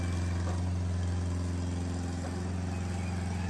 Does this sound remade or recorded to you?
recorded